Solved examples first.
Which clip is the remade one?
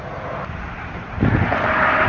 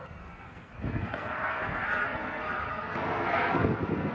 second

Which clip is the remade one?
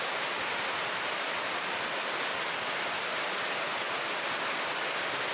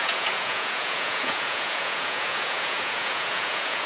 second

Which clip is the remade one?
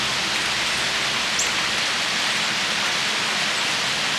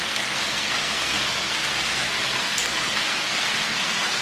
second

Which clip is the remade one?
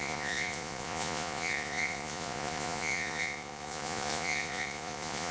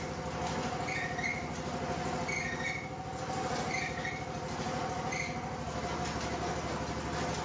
first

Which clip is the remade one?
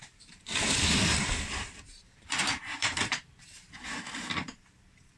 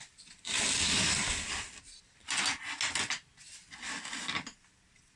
first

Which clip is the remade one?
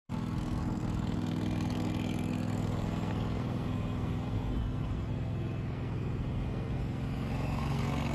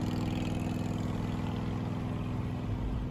first